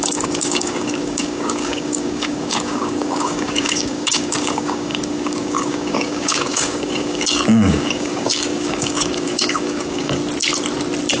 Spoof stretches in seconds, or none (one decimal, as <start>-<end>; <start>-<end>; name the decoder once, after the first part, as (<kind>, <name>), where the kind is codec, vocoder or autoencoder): 0.0-10.2 (codec, DAC)